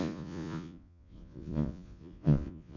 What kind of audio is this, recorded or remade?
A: remade